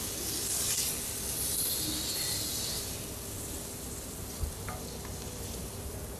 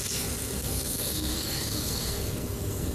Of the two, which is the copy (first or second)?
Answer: second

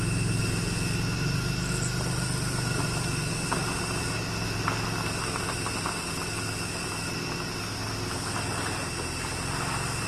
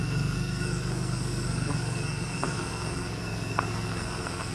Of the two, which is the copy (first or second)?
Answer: second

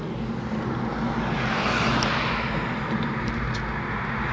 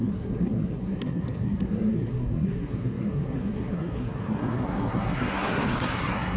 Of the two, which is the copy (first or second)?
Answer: second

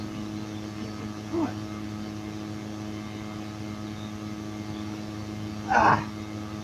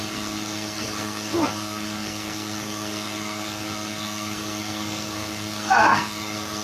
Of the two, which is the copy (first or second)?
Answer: second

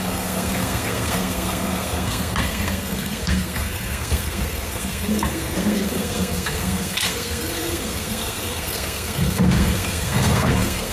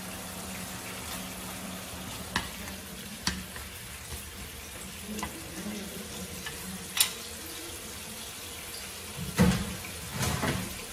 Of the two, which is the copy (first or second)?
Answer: first